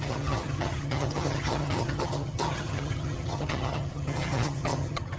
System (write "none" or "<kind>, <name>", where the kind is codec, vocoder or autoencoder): vocoder, HiFi-GAN